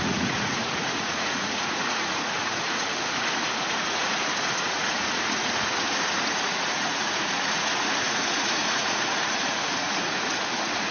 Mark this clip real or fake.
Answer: fake